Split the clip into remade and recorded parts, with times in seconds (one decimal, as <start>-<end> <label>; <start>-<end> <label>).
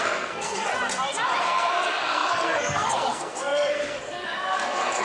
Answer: 0.0-0.7 remade; 0.7-1.4 recorded; 1.4-5.0 remade